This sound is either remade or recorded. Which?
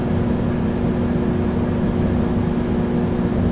recorded